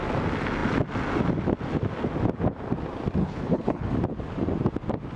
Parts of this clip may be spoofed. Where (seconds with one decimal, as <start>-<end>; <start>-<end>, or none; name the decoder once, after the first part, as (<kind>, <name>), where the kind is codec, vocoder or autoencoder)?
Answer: 3.2-3.9 (codec, HILCodec)